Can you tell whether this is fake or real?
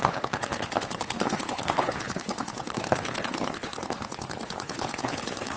fake